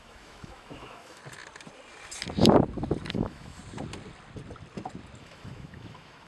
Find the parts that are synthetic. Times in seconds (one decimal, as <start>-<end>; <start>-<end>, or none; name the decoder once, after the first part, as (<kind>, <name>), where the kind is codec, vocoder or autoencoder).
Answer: 0.0-1.2 (autoencoder, DAC-VAE); 3.1-3.6; 5.2-6.3